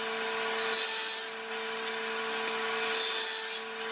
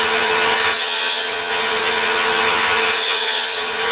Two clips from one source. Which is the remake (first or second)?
second